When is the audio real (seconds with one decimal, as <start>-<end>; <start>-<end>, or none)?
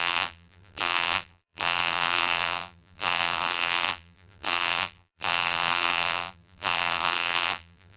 none